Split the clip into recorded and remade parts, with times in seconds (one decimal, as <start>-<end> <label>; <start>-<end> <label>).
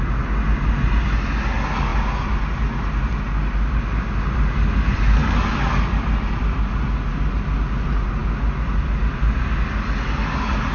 0.0-10.7 recorded